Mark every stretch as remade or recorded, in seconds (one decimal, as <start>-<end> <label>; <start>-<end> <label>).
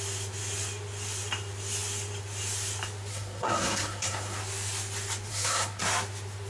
0.0-3.1 recorded; 3.1-4.4 remade; 4.4-5.3 recorded; 5.3-5.8 remade; 5.8-6.5 recorded